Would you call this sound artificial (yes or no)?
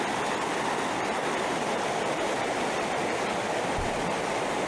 no